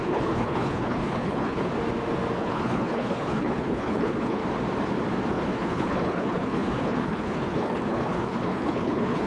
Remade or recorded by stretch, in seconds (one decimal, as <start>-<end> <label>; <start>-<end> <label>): 0.0-1.7 remade; 1.7-2.4 recorded; 2.4-4.4 remade; 4.4-5.3 recorded; 5.3-9.3 remade